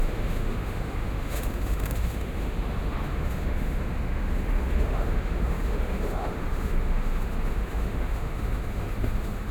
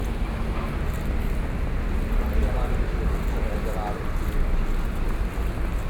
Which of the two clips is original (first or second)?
second